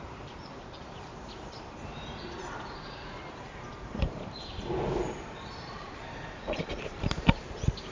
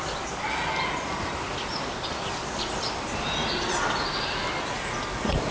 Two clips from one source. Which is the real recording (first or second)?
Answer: second